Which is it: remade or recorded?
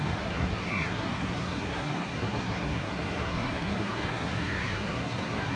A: remade